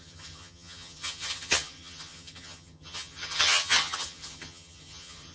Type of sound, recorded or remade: remade